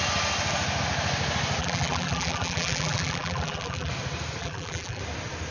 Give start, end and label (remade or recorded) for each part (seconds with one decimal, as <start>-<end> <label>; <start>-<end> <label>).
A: 0.0-1.6 recorded; 1.6-3.9 remade; 3.9-4.4 recorded; 4.4-5.0 remade; 5.0-5.5 recorded